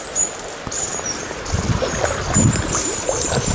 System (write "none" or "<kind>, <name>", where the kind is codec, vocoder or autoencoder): vocoder, BigVGAN v2